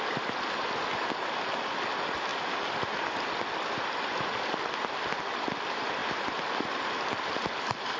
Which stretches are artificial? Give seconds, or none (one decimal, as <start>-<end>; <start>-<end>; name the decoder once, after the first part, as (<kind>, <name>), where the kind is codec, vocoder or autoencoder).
none